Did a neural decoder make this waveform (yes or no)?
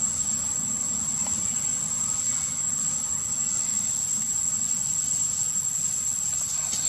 no